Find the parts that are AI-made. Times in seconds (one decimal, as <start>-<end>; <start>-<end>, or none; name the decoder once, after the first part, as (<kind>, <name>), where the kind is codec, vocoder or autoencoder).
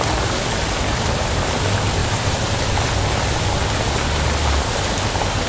2.0-2.6 (vocoder, BigVGAN v2)